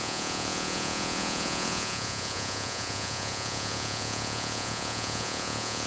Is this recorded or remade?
remade